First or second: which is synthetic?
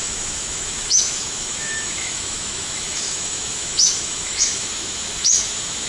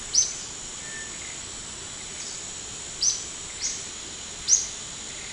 first